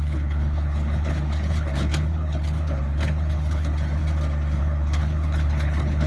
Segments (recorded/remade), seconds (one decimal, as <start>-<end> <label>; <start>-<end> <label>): 0.0-4.0 remade; 4.0-4.6 recorded; 4.6-6.1 remade